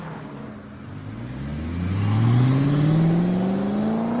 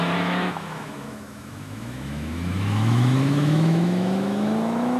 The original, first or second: first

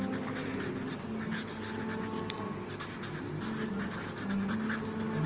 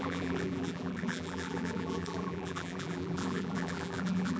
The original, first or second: first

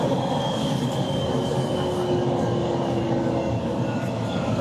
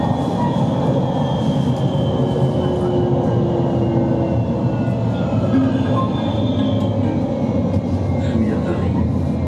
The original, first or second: second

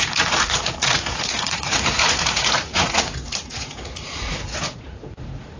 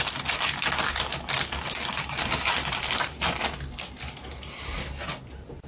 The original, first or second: second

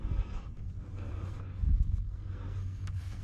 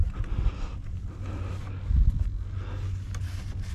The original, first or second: second